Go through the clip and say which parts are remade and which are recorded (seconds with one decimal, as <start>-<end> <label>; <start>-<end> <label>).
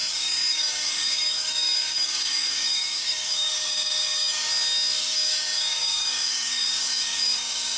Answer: 0.0-4.5 remade; 4.5-5.0 recorded; 5.0-7.8 remade